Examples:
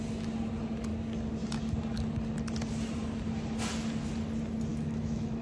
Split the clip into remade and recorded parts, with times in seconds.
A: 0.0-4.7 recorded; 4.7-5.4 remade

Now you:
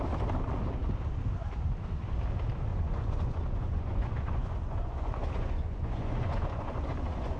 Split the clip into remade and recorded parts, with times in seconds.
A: 0.0-2.7 recorded; 2.7-7.4 remade

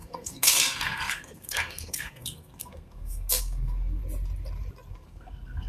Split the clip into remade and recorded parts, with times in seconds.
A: 0.0-4.0 remade; 4.0-4.9 recorded; 4.9-5.7 remade

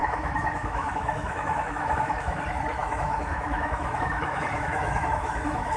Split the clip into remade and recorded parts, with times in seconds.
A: 0.0-2.4 remade; 2.4-2.8 recorded; 2.8-5.8 remade

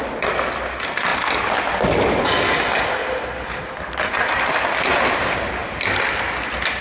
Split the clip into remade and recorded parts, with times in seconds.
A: 0.0-6.8 recorded